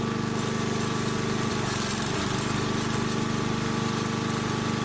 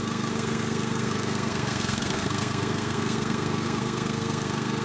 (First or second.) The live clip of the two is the first